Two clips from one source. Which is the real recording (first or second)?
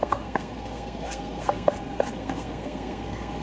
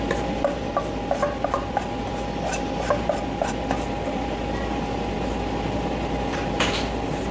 second